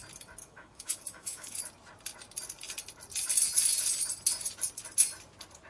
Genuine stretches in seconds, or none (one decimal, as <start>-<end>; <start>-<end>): 0.0-0.4; 1.6-5.7

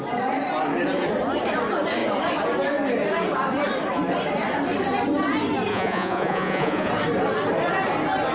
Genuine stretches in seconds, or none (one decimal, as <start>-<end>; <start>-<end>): 0.0-5.7; 6.9-8.3

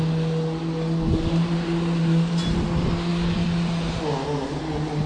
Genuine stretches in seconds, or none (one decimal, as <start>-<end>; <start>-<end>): 0.0-5.1

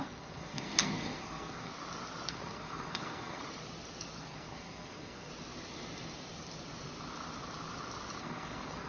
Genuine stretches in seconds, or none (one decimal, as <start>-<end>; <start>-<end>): 1.7-2.3; 3.4-4.2; 5.3-8.2

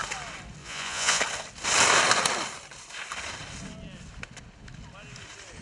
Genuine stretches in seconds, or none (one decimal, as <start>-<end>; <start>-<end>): 0.0-0.6; 1.2-5.6

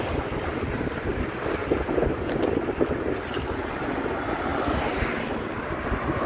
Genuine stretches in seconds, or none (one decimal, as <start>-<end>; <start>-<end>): 0.0-1.6; 2.4-6.3